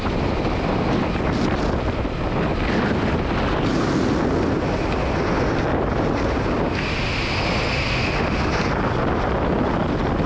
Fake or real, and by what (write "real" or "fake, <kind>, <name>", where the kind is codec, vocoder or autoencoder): real